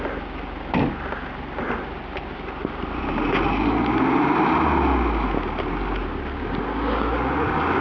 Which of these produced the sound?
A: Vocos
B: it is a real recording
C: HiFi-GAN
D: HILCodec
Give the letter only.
B